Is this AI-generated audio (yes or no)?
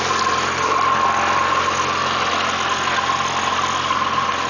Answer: no